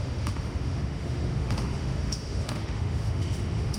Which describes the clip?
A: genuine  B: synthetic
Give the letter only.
B